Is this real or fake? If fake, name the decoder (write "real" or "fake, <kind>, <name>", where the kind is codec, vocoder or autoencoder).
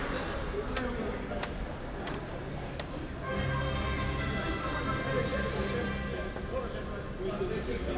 real